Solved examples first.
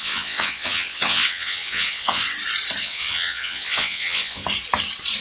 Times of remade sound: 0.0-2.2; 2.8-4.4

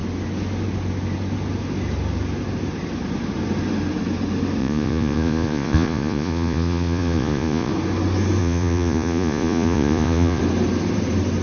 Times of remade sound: 4.6-7.7; 8.4-10.4